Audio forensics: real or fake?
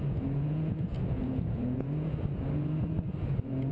fake